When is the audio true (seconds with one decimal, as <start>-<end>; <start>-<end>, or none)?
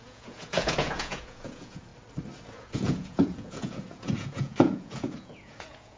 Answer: 1.9-2.5